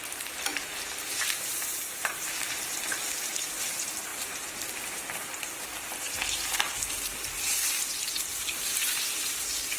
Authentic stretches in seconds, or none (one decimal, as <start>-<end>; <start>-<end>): none

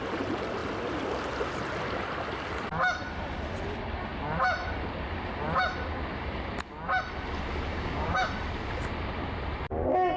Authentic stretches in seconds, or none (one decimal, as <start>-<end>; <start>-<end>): 0.0-7.7; 8.3-10.2